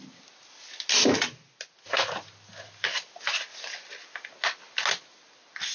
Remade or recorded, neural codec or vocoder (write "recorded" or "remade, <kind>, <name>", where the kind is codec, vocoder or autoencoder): recorded